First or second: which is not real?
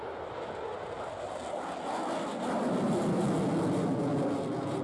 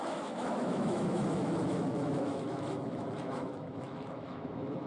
second